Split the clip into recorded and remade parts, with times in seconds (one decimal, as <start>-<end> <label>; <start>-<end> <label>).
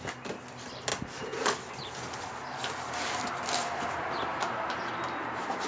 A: 0.0-4.3 remade; 4.3-4.8 recorded; 4.8-5.7 remade